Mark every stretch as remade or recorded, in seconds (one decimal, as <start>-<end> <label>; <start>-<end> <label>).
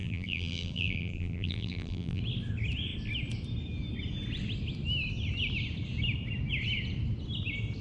0.0-2.2 remade; 2.2-7.8 recorded